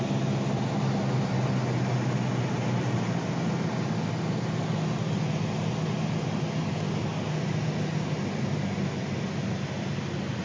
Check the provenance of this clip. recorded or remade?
recorded